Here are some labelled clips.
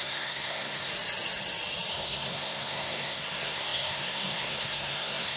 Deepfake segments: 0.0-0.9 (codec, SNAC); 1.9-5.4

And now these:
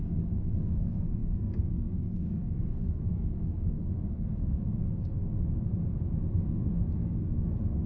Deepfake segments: 0.0-4.9 (codec, SNAC); 6.3-7.9

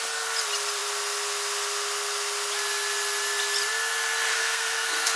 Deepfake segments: 4.3-5.2 (codec, SNAC)

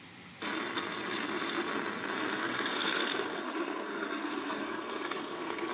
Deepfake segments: 2.4-5.7 (codec, SNAC)

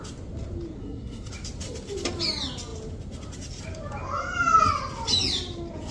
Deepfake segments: 0.8-1.3 (codec, SNAC)

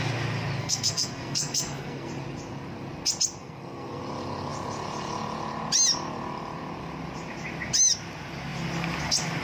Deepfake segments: 0.6-2.1 (codec, SNAC); 3.4-4.0